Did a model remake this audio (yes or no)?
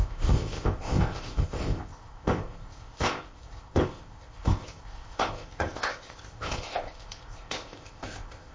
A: yes